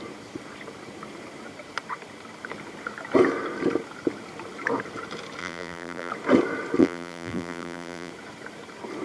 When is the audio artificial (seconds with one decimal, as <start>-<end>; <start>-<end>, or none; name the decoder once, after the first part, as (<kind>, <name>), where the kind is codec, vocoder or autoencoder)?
5.4-6.1 (vocoder, BigVGAN v2); 6.8-8.1